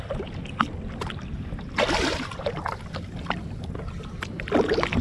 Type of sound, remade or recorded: recorded